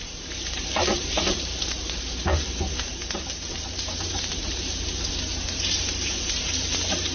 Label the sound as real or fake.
fake